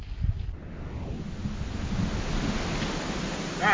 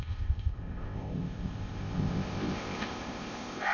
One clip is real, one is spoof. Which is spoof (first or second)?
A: second